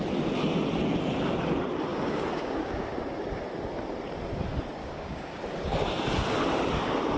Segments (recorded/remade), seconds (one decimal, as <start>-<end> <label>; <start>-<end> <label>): 0.0-1.9 recorded; 1.9-2.9 remade; 2.9-4.8 recorded; 4.8-5.4 remade; 5.4-7.2 recorded